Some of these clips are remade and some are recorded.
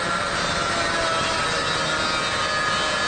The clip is recorded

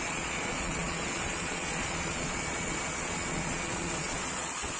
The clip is remade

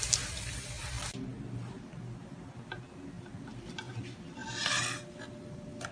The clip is recorded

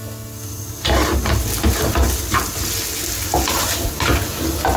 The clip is recorded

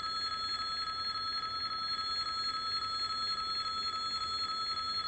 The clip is recorded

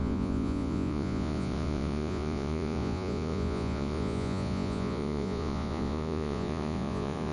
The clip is remade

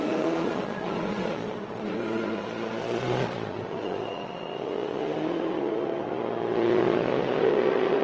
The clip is remade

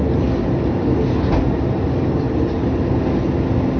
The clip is recorded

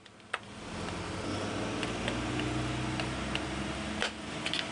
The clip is recorded